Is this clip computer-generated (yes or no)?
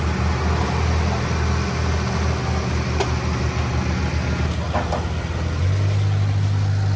no